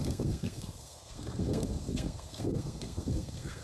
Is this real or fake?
fake